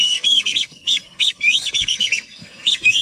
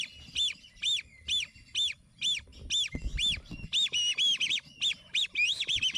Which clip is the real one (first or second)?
second